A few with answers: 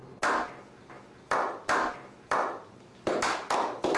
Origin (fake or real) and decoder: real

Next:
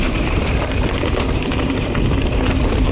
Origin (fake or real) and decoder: fake, vocoder, BigVGAN v2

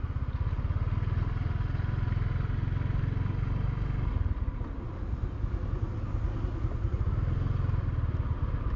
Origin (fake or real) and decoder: real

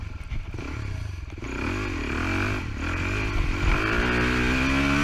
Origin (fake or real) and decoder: real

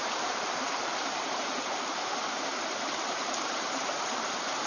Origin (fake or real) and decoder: fake, vocoder, BigVGAN v2